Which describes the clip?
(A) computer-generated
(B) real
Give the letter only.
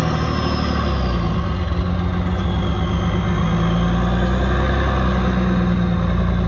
B